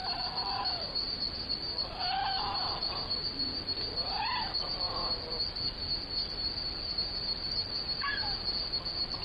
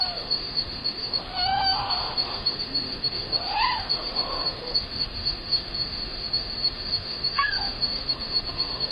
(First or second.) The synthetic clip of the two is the second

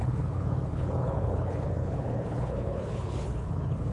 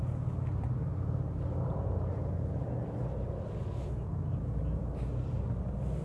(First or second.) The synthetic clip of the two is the first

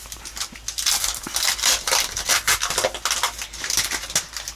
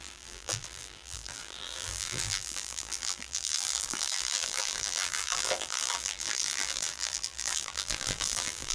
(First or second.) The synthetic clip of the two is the second